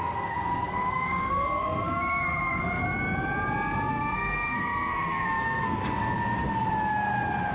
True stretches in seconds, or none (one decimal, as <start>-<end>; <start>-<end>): 2.8-3.9; 5.8-7.5